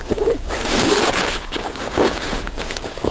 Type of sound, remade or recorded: remade